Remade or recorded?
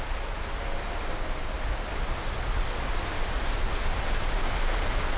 recorded